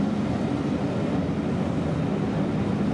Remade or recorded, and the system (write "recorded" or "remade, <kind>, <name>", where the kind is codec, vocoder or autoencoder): recorded